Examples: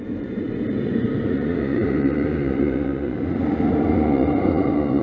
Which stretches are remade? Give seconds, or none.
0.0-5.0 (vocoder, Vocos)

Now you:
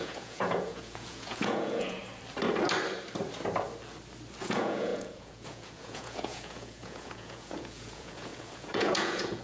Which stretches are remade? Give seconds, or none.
0.0-2.0 (vocoder, Vocos); 4.4-9.4

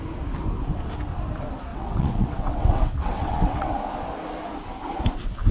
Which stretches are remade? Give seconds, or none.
1.7-3.7 (vocoder, WaveNeXt)